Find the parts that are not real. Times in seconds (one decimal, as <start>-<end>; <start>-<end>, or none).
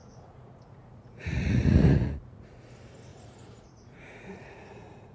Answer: 0.0-2.7; 3.1-5.1